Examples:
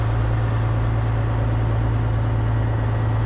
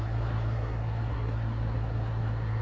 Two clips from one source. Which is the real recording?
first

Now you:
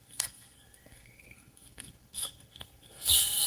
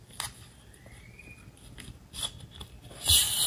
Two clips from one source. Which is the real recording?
second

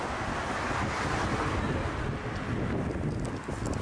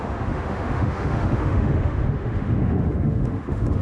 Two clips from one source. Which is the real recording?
first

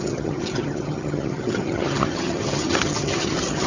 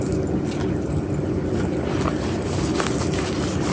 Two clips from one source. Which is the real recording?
second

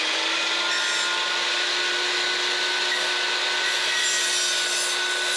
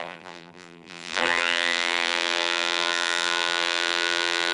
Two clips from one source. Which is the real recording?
first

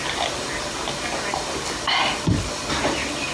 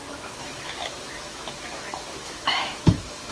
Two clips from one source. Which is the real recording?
first